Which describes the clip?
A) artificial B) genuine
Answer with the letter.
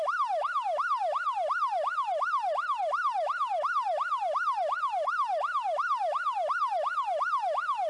B